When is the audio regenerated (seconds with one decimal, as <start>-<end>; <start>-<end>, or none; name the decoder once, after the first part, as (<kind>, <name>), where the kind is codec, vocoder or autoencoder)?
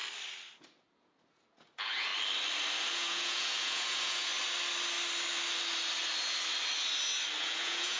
0.8-2.1 (vocoder, Vocos); 2.9-4.3; 7.4-8.0